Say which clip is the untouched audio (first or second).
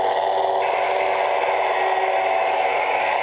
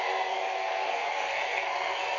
first